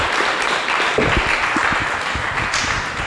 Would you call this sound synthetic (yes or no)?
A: no